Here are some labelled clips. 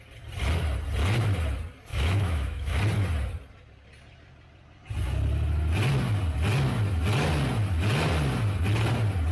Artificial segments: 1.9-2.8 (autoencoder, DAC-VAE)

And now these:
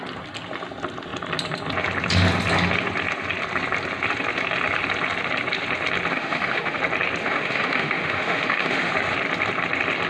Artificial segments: 6.1-6.8 (autoencoder, DAC-VAE); 7.2-8.9